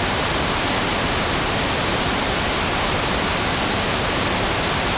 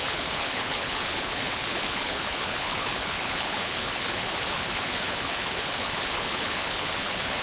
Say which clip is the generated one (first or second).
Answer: second